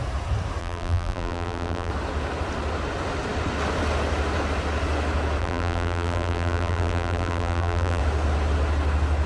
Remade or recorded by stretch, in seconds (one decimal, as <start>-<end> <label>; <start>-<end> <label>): 0.0-0.6 recorded; 0.6-1.9 remade; 1.9-5.4 recorded; 5.4-8.0 remade; 8.0-9.3 recorded